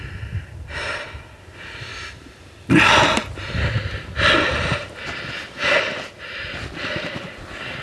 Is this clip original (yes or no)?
yes